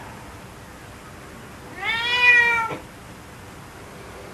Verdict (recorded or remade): recorded